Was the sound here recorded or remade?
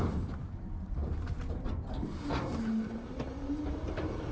remade